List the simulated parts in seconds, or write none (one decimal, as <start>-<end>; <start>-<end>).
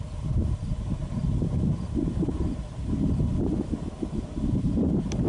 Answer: none